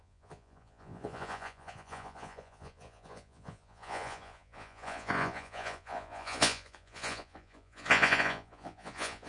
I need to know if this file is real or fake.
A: fake